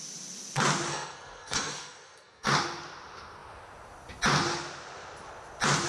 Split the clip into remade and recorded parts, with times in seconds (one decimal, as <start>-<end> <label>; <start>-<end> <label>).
0.0-0.9 recorded; 0.9-2.5 remade; 2.5-5.9 recorded